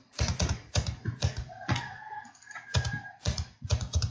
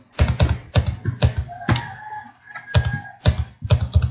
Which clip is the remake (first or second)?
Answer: first